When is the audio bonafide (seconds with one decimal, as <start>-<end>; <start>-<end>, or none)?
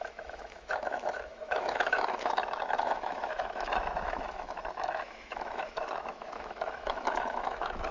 none